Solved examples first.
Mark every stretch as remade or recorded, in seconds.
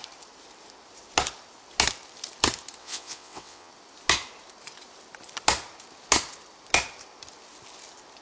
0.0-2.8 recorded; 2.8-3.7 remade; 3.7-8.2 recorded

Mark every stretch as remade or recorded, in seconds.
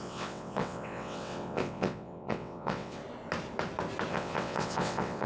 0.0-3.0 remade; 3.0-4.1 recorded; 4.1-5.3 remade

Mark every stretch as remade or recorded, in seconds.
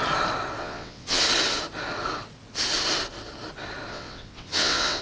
0.0-0.6 recorded; 0.6-1.2 remade; 1.2-3.9 recorded; 3.9-5.0 remade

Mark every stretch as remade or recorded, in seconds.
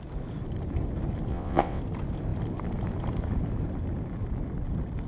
0.0-1.3 recorded; 1.3-1.8 remade; 1.8-5.1 recorded